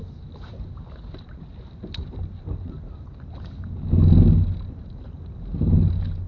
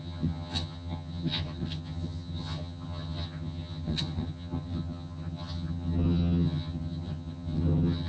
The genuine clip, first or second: first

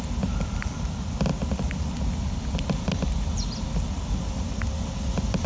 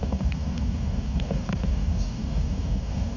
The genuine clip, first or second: first